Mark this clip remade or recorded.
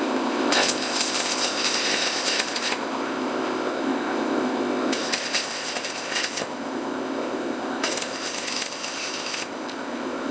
remade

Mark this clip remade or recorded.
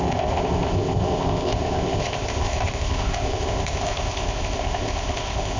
remade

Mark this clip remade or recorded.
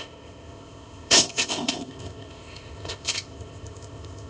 remade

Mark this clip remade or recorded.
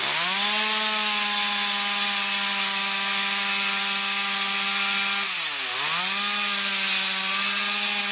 recorded